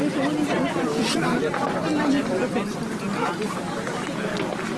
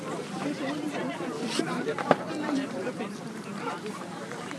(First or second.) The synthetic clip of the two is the second